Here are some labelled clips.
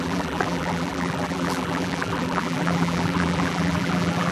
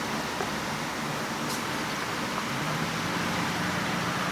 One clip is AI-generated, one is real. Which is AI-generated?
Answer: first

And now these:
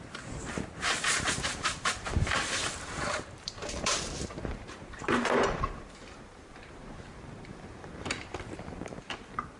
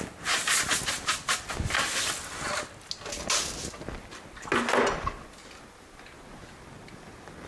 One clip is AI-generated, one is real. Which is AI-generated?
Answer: first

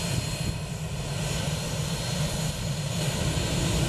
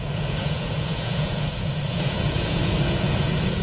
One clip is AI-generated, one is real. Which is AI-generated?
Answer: second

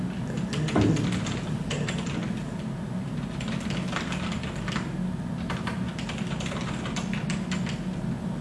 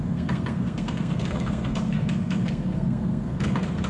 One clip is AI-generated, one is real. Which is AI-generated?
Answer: second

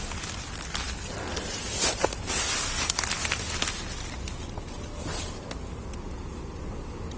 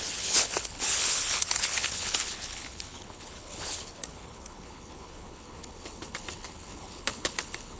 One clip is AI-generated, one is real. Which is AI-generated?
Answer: second